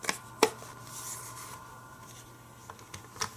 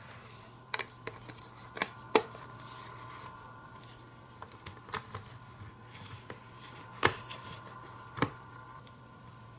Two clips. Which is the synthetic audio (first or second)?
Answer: second